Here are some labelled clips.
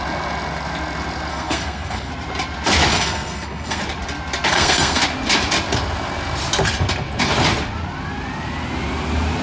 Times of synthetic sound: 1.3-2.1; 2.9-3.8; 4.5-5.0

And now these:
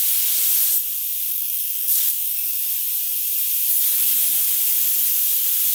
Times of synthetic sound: 1.3-2.6